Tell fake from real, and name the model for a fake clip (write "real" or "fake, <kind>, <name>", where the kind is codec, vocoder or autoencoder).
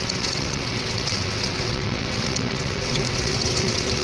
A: fake, vocoder, WaveNeXt